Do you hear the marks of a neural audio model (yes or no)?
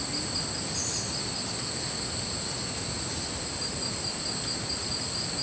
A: no